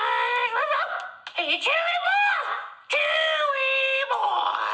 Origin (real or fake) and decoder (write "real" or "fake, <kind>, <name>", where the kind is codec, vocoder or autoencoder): real